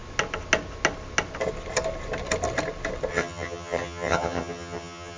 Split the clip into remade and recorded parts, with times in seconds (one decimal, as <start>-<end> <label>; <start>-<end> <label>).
0.0-3.1 recorded; 3.1-5.2 remade